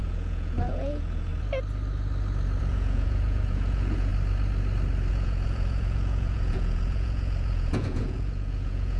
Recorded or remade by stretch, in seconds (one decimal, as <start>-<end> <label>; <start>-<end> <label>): 0.0-1.3 remade; 1.3-2.6 recorded; 2.6-4.1 remade; 4.1-5.1 recorded; 5.1-9.0 remade